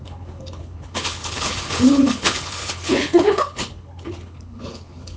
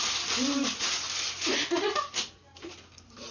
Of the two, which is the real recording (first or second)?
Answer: second